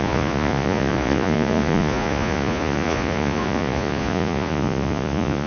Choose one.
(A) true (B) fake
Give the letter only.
B